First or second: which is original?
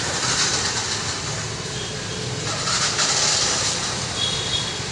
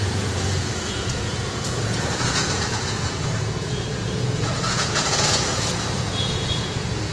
first